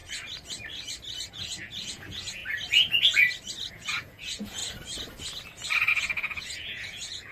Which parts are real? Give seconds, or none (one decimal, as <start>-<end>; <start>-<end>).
0.0-1.3; 2.4-3.7; 4.6-5.9